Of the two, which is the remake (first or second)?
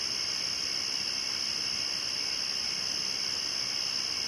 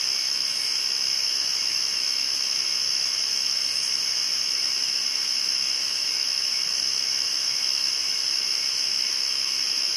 second